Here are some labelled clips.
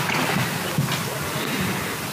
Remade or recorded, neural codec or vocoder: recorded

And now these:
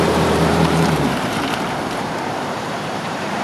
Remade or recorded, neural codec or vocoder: remade, vocoder, BigVGAN v2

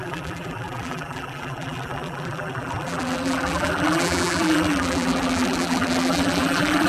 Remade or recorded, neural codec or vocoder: remade, vocoder, BigVGAN v2